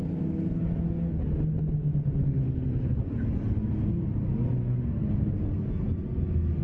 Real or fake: real